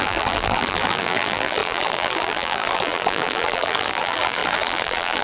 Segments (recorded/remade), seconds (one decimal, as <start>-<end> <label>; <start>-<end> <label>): 0.0-5.2 remade